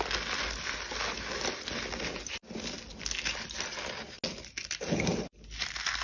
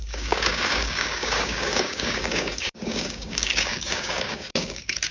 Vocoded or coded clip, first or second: second